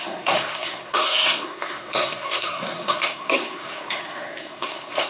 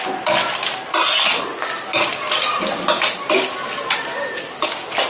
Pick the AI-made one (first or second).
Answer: first